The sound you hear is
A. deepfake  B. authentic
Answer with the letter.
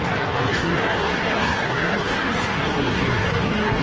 A